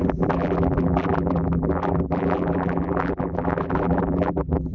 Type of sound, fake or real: fake